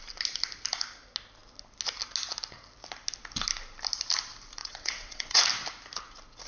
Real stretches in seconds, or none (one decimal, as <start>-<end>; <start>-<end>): 0.0-4.6; 5.4-6.5